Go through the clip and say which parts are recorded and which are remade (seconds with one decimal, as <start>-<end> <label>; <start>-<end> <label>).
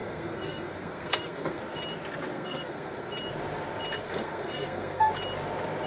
0.0-1.6 remade; 1.6-2.3 recorded; 2.3-3.1 remade; 3.1-4.0 recorded; 4.0-5.1 remade; 5.1-5.9 recorded